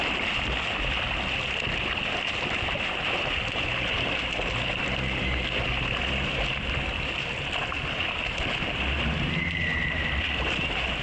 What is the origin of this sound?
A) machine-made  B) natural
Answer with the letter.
B